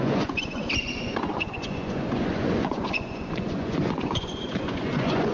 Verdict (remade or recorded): remade